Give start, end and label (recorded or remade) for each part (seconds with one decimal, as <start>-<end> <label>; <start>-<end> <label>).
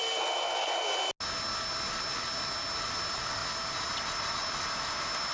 0.0-5.3 recorded